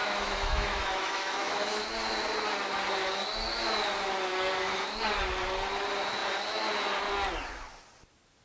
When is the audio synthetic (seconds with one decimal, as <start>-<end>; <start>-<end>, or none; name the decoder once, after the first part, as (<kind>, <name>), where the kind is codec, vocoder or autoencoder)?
0.0-1.9 (autoencoder, DAC-VAE)